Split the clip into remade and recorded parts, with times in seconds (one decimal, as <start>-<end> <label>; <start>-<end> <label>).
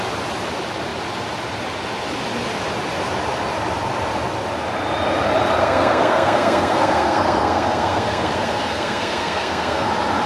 0.0-5.6 recorded; 5.6-9.9 remade; 9.9-10.3 recorded